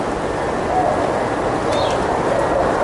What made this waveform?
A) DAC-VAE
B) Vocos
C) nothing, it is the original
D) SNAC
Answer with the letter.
C